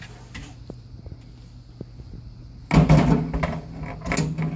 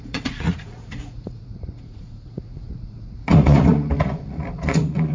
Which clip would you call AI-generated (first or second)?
second